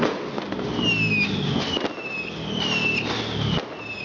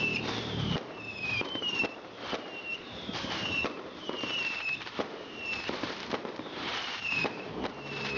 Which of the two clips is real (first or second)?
first